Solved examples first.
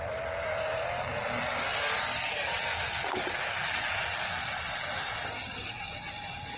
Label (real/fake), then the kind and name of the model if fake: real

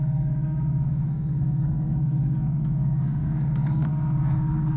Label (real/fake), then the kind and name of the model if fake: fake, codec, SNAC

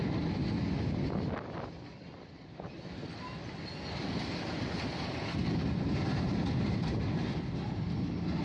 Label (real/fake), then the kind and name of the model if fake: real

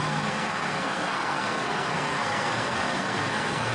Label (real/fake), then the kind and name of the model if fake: fake, codec, SNAC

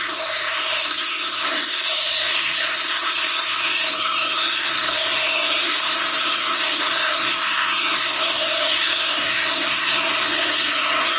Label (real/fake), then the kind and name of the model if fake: fake, codec, SNAC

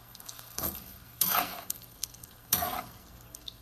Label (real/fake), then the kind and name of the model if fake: fake, codec, SNAC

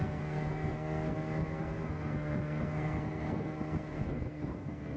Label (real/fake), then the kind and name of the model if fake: fake, codec, SNAC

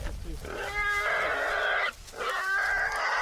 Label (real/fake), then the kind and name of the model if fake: real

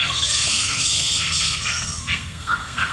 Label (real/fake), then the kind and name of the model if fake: fake, codec, SNAC